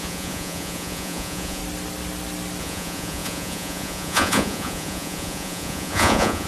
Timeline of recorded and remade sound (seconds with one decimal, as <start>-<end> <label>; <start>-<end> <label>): 0.0-1.6 remade; 1.6-2.6 recorded; 2.6-6.5 remade